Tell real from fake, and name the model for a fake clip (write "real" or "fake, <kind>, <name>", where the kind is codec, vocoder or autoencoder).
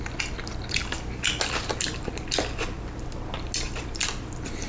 real